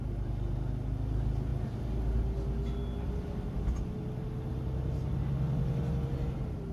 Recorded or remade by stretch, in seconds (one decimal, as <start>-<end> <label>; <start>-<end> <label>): 0.0-6.7 recorded